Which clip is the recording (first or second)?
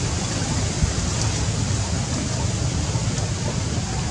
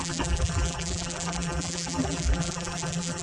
first